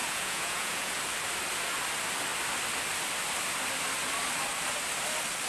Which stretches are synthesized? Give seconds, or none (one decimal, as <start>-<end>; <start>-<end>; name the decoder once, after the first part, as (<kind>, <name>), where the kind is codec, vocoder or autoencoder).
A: 0.0-1.0 (vocoder, Vocos)

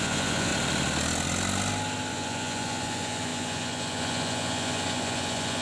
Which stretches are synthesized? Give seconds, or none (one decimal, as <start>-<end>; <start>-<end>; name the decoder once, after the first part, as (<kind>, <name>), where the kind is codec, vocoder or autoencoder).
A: 0.0-0.5 (vocoder, Vocos); 2.1-5.6

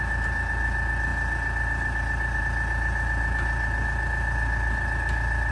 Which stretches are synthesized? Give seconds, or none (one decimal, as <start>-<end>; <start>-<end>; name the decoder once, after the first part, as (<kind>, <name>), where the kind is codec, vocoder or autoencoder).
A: none

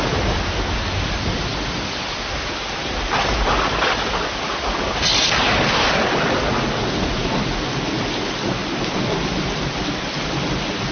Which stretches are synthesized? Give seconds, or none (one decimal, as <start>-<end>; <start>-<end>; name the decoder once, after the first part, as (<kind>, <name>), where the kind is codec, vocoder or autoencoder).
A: none

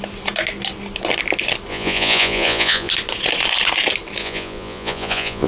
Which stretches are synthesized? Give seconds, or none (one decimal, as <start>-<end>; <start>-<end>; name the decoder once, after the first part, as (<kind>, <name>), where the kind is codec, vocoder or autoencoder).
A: 1.7-2.9 (vocoder, Vocos); 4.2-5.5

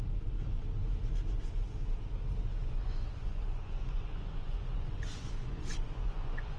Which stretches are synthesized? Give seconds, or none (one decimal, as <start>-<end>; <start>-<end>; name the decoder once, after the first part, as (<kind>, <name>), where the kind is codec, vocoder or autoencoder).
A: 2.5-6.6 (vocoder, Vocos)

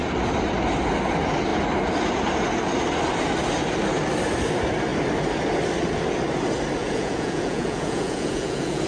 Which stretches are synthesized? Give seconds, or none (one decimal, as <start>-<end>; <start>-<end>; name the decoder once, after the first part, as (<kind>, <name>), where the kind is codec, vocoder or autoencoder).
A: 6.8-8.9 (vocoder, Vocos)